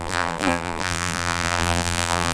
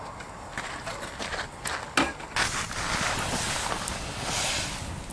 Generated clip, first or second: first